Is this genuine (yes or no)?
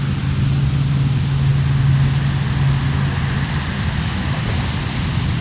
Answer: yes